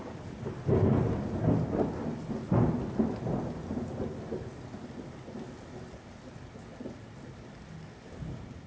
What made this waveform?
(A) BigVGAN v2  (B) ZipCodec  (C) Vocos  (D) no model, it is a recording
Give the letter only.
D